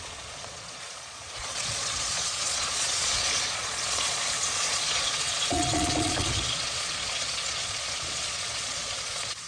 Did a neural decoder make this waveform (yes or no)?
yes